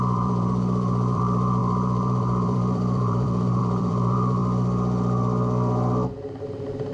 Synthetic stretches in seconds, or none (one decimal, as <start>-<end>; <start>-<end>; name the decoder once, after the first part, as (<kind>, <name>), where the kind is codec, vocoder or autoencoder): 0.0-4.4 (vocoder, BigVGAN v2); 6.4-6.9

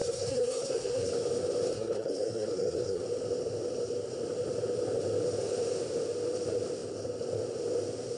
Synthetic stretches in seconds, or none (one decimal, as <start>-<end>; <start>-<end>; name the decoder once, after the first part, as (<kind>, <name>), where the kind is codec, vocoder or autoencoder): 0.0-1.1 (codec, SNAC); 1.7-3.0

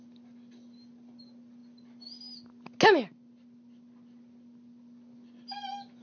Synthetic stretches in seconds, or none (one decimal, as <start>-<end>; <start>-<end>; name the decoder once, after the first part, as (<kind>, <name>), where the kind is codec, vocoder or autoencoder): none